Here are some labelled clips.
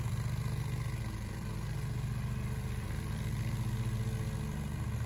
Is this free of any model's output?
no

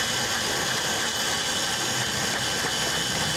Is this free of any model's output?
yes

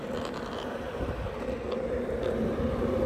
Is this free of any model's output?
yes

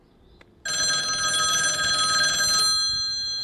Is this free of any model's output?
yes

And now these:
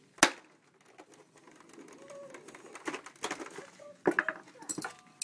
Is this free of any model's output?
yes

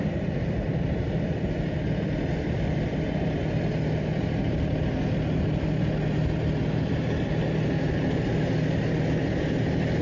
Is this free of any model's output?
yes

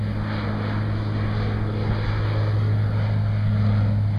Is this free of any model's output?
yes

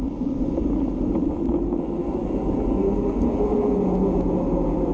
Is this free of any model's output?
yes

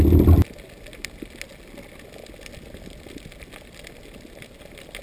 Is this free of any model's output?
yes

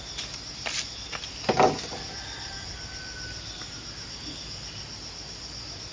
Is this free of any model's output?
yes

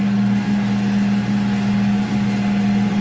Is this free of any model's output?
yes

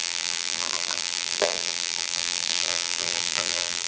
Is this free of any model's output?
no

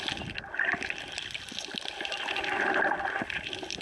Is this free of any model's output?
yes